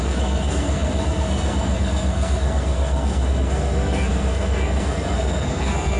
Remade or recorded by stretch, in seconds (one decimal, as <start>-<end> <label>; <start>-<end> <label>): 0.0-6.0 remade

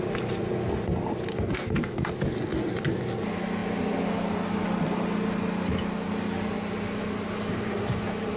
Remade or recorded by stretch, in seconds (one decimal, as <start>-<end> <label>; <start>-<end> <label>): 0.0-1.3 recorded; 1.3-2.1 remade; 2.1-8.4 recorded

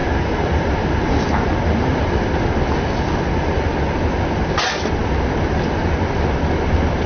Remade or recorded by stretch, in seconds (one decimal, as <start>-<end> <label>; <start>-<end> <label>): 0.0-7.1 recorded

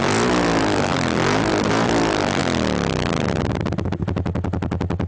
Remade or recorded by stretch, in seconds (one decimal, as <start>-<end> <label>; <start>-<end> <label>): 0.0-5.1 recorded